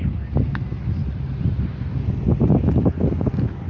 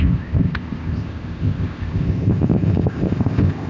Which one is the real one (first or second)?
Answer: first